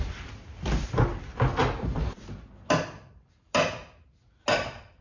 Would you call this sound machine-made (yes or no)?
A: no